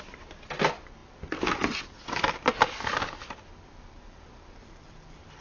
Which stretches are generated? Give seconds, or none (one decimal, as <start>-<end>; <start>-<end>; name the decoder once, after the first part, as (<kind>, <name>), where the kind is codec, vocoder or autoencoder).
none